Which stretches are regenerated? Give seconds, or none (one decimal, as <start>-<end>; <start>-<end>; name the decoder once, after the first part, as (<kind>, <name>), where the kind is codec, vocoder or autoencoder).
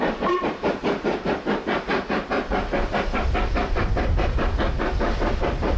0.0-5.8 (vocoder, BigVGAN v2)